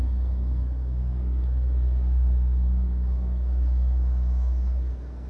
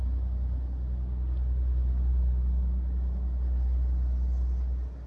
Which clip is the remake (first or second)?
first